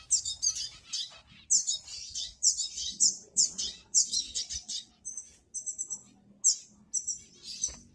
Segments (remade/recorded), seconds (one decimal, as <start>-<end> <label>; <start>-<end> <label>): 0.0-1.9 recorded; 1.9-4.9 remade; 4.9-7.9 recorded